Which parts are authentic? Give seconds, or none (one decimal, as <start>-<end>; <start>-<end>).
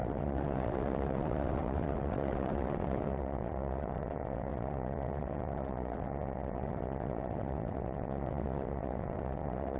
none